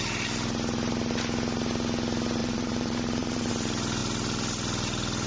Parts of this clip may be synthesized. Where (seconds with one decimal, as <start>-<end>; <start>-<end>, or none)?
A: 2.4-3.5